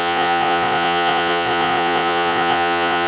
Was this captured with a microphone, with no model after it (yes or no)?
no